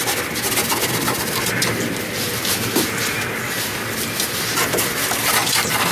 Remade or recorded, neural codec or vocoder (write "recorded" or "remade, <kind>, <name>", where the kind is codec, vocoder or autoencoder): recorded